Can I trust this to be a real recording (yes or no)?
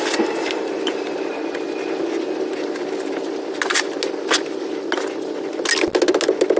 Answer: yes